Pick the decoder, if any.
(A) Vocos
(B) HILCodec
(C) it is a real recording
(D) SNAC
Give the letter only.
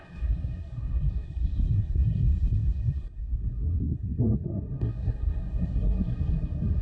D